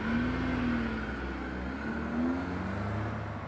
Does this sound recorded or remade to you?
recorded